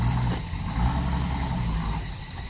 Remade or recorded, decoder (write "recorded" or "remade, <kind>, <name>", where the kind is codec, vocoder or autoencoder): recorded